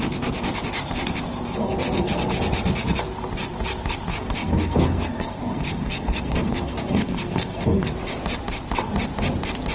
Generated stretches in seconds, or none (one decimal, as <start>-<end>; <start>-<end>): 1.6-2.4; 4.1-7.9